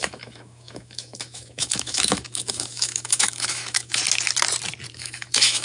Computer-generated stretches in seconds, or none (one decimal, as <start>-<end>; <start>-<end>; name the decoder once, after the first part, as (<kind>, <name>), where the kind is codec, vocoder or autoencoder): 0.0-4.0 (autoencoder, DAC-VAE); 4.9-5.6